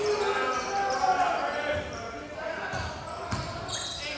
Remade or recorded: recorded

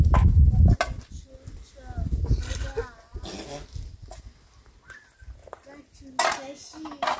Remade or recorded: recorded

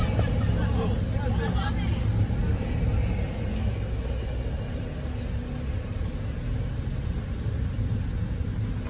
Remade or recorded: recorded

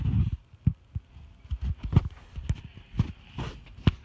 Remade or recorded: recorded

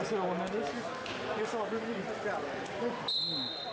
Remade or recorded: recorded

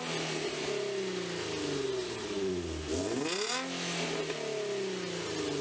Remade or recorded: recorded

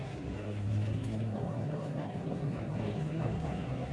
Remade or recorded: remade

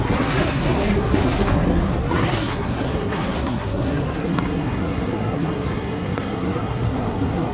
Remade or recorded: remade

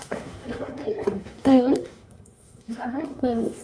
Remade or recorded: remade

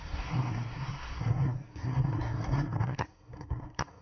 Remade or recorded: remade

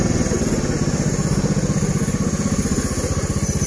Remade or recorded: recorded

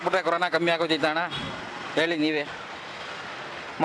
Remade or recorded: recorded